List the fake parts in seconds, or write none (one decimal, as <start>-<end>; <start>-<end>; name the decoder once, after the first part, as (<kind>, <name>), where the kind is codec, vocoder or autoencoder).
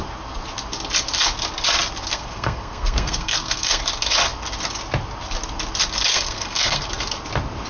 2.1-3.8 (codec, SNAC); 6.1-6.8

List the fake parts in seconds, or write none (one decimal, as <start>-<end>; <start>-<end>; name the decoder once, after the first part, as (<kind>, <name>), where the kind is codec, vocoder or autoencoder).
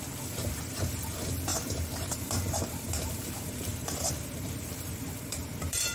0.0-5.9 (vocoder, BigVGAN v2)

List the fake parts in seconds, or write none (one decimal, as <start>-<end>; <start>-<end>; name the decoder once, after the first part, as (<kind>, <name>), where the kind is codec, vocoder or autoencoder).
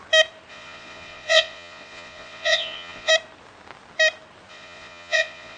0.5-3.1 (vocoder, Vocos); 4.5-5.6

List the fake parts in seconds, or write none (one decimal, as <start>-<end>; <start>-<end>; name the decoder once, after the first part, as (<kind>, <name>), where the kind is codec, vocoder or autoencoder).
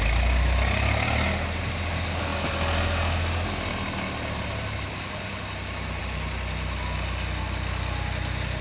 none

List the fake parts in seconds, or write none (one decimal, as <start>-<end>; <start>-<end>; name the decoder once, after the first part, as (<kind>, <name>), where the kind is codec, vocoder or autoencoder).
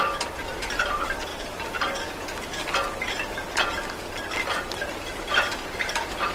0.0-1.3 (vocoder, BigVGAN v2); 4.9-6.3